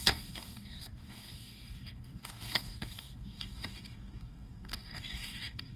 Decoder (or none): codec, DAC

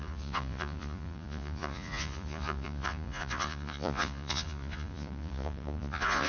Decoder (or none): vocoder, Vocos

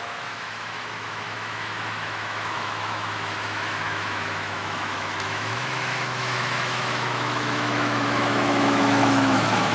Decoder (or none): autoencoder, DAC-VAE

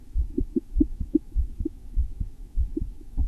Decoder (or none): autoencoder, DAC-VAE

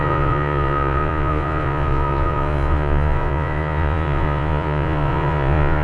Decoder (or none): vocoder, Vocos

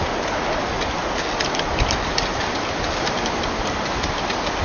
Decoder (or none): none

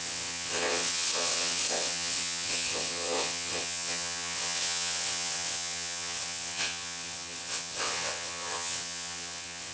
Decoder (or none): vocoder, WaveNeXt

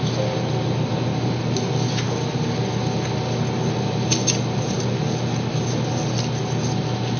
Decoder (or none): none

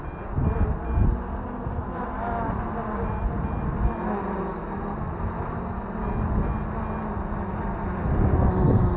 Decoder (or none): none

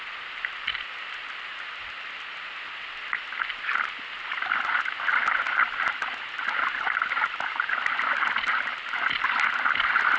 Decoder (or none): none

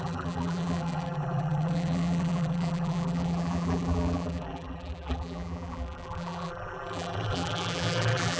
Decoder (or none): vocoder, BigVGAN v2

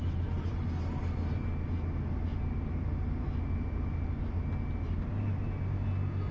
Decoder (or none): none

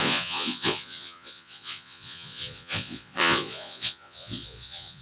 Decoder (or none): vocoder, Vocos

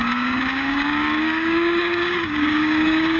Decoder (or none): codec, DAC